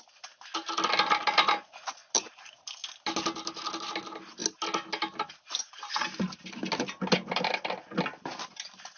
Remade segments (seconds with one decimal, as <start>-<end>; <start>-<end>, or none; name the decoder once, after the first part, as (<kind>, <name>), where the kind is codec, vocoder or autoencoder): none